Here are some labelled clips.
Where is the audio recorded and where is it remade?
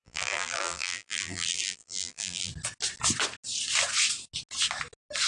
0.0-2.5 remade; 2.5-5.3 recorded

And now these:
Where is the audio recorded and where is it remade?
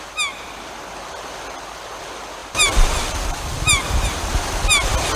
0.0-2.4 recorded; 2.4-4.3 remade; 4.3-5.2 recorded